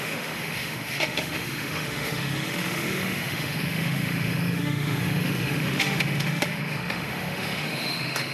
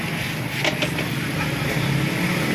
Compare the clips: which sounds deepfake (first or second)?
first